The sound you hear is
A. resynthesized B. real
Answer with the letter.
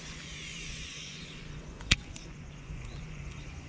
A